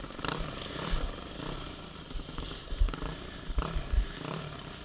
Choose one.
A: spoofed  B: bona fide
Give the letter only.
A